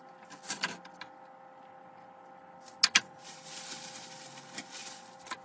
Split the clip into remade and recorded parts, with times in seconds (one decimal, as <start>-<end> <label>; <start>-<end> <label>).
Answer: 0.0-5.4 recorded